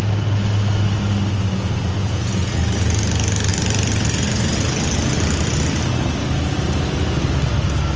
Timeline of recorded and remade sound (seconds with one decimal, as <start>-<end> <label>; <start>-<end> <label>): 0.0-2.0 recorded; 2.0-2.6 remade; 2.6-8.0 recorded